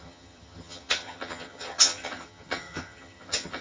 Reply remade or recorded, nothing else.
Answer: remade